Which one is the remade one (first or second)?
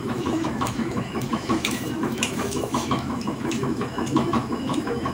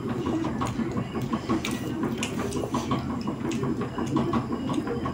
first